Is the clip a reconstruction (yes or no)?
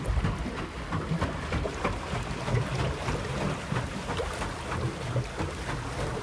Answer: no